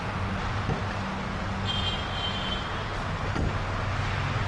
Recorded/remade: recorded